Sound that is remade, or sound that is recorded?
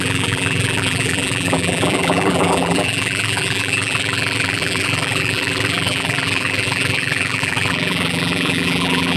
remade